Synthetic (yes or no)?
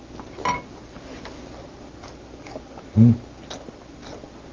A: no